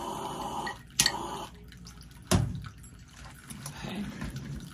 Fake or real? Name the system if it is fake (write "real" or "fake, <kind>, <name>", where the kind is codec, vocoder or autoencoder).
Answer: real